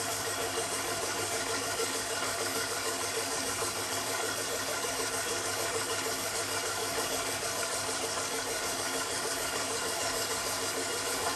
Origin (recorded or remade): remade